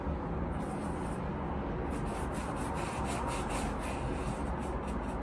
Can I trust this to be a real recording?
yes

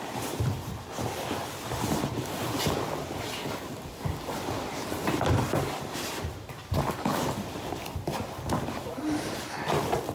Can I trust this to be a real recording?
no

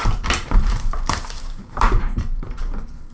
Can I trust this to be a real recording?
no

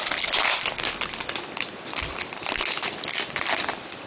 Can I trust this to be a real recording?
no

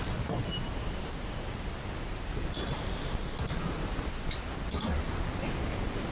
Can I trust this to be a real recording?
yes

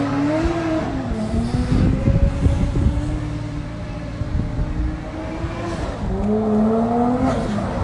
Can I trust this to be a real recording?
yes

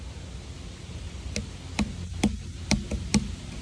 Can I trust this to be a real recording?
yes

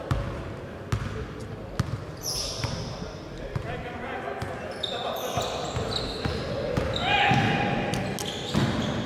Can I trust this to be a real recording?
yes